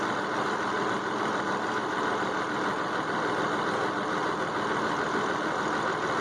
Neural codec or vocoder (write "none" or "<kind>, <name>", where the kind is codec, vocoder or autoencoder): none